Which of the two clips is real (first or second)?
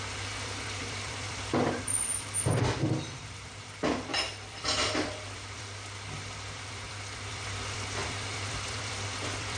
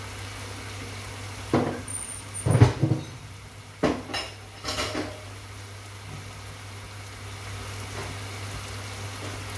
second